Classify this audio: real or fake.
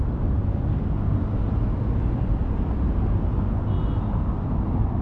real